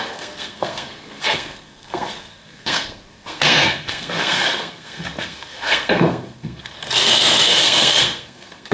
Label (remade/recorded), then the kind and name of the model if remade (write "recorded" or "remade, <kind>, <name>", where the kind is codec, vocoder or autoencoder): remade, codec, SNAC